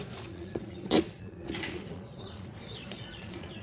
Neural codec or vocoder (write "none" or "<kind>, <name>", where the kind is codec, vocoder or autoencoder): vocoder, Vocos